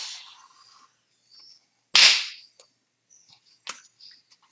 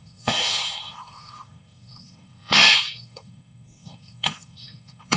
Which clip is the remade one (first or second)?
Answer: second